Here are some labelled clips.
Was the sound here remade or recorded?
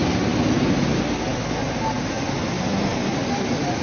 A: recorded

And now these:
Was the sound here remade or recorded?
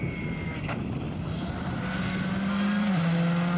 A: recorded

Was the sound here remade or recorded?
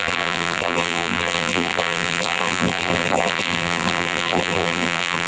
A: remade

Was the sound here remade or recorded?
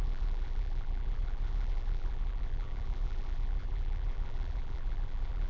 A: remade